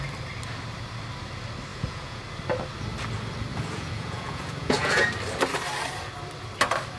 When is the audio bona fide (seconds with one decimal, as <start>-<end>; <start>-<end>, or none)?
0.0-1.7; 2.2-3.5; 5.1-7.0